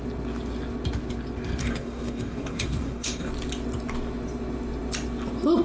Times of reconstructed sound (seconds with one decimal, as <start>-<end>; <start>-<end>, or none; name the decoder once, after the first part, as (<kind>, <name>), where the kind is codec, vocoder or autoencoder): 1.6-3.3 (codec, DAC)